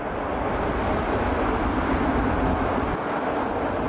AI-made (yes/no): no